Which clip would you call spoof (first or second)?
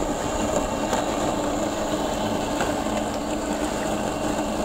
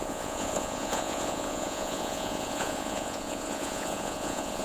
second